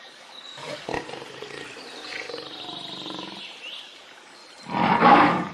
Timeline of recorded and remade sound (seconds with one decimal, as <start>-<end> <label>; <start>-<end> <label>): 0.0-0.9 remade; 0.9-3.8 recorded; 3.8-4.4 remade; 4.4-5.0 recorded; 5.0-5.5 remade